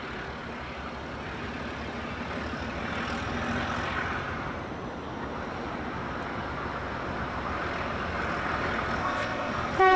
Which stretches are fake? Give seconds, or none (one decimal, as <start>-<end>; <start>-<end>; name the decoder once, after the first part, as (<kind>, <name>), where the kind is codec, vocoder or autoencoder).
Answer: 9.0-9.5 (codec, ZipCodec)